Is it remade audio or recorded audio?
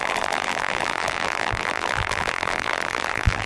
remade